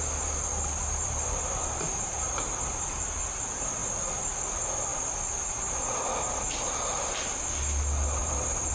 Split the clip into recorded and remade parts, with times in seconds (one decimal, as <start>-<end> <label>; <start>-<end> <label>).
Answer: 0.0-8.2 recorded; 8.2-8.7 remade